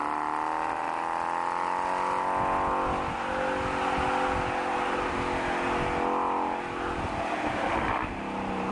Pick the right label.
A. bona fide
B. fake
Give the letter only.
A